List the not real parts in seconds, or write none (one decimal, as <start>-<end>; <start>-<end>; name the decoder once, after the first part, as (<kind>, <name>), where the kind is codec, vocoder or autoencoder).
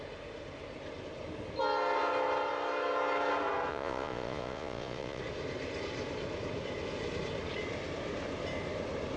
3.7-5.2 (vocoder, Vocos)